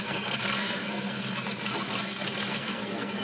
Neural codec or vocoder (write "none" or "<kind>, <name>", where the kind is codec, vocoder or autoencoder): codec, SNAC